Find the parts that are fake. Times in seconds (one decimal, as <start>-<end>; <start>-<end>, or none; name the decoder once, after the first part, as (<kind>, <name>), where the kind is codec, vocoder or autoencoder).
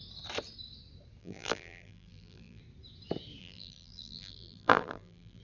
1.2-2.6 (vocoder, BigVGAN v2); 3.4-5.4